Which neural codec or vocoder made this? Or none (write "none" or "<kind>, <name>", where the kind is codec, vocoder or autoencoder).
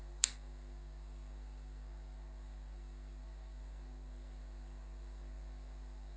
codec, SNAC